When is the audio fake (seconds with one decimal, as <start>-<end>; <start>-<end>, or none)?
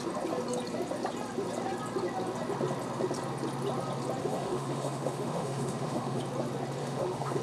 4.2-6.2; 6.8-7.4